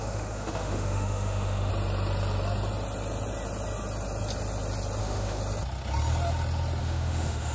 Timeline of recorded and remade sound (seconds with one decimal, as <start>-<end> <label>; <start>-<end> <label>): 0.0-1.7 remade; 1.7-5.0 recorded; 5.0-5.4 remade; 5.4-6.8 recorded; 6.8-7.5 remade